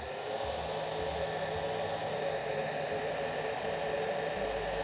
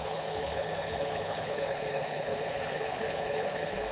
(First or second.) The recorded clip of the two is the first